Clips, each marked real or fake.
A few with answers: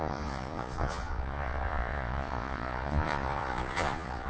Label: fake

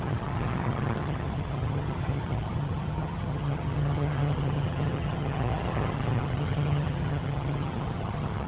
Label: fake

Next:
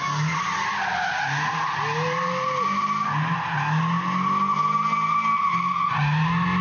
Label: real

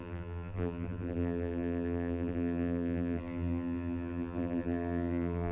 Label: fake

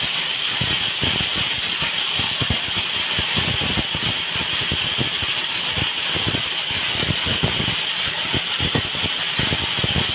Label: real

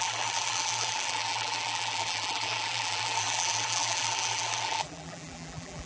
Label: fake